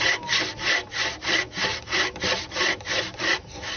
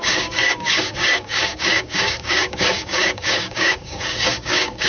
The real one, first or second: first